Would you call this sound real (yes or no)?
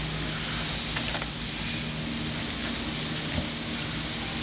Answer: yes